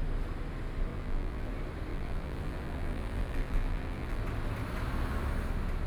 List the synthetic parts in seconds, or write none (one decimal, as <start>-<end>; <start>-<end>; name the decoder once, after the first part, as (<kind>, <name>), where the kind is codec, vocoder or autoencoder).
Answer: 0.9-1.5 (vocoder, BigVGAN v2); 1.9-4.2